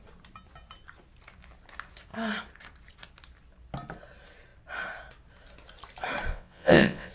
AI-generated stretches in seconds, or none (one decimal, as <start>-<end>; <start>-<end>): 6.3-7.1